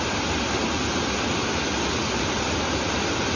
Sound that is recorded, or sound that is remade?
recorded